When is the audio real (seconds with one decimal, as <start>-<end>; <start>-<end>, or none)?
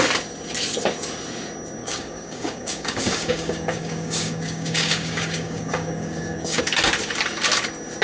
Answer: 0.0-1.8; 6.6-8.0